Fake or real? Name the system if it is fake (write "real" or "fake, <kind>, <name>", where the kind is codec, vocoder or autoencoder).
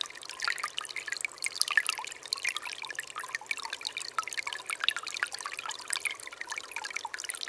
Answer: real